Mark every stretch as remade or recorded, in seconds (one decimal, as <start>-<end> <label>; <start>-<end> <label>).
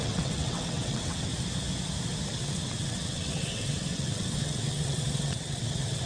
0.0-1.3 remade; 1.3-2.3 recorded; 2.3-6.1 remade